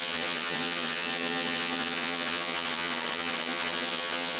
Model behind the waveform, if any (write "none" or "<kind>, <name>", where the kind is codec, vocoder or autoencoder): vocoder, HiFi-GAN